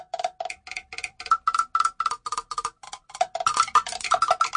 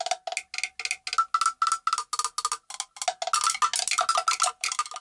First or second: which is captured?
second